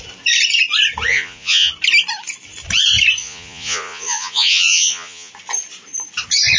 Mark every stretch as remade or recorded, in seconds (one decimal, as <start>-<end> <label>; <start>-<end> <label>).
0.0-1.1 recorded; 1.1-1.7 remade; 1.7-3.2 recorded; 3.2-5.3 remade; 5.3-6.6 recorded